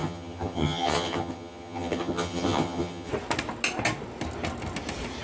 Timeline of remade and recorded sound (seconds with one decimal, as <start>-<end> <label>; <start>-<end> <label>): 0.0-3.1 remade; 3.1-5.2 recorded